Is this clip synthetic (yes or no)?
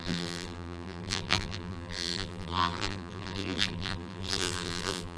yes